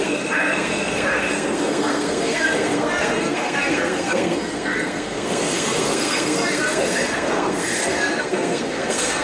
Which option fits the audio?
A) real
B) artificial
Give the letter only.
B